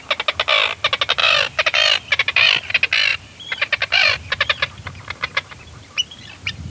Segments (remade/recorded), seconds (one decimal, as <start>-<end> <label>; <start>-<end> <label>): 0.0-1.2 recorded; 1.2-2.7 remade; 2.7-3.1 recorded; 3.1-6.7 remade